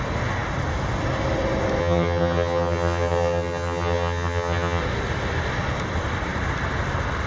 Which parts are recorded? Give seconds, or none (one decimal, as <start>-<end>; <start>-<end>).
0.0-1.8; 4.8-7.3